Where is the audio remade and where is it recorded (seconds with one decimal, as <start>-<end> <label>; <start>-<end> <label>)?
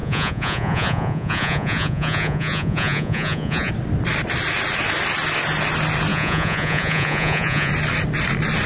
0.0-3.7 remade; 3.7-6.1 recorded; 6.1-7.7 remade; 7.7-8.7 recorded